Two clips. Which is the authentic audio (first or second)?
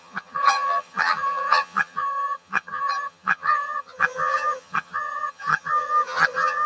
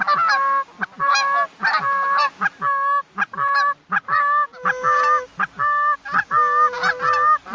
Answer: second